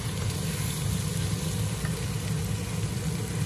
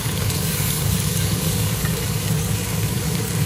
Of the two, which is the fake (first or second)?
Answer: second